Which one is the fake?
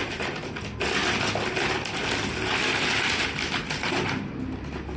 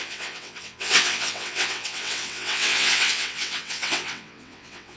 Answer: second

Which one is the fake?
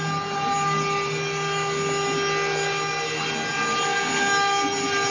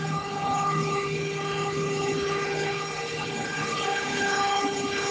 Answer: second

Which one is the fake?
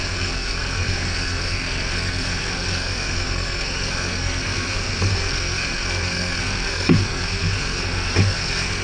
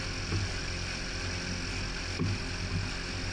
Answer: first